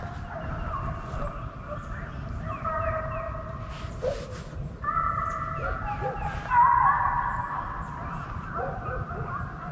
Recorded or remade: recorded